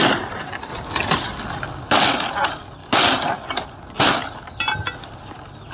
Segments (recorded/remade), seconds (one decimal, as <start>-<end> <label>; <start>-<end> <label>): 0.0-5.7 recorded